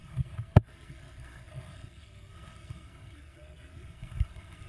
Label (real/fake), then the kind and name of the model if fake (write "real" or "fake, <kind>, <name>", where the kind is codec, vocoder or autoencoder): fake, codec, SNAC